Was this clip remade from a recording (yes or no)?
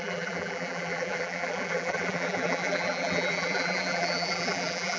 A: yes